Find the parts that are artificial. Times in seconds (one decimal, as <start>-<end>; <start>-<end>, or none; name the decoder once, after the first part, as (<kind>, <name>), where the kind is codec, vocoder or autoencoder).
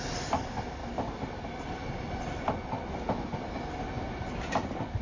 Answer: none